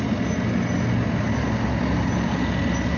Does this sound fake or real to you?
real